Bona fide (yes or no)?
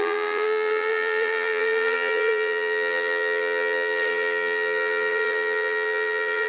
no